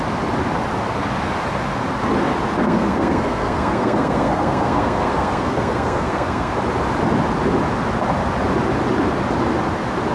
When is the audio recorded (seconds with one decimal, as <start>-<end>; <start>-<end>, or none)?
0.0-2.6; 6.5-10.1